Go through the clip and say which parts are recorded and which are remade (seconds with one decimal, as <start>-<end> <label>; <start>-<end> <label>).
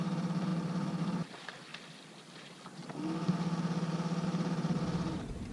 0.0-1.7 remade; 1.7-2.4 recorded; 2.4-2.8 remade; 2.8-3.9 recorded; 3.9-5.5 remade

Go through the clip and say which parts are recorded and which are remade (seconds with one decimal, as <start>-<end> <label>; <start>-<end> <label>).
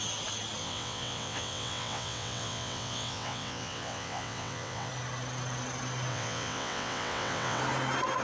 0.0-0.6 recorded; 0.6-4.9 remade; 4.9-6.1 recorded; 6.1-7.6 remade; 7.6-8.2 recorded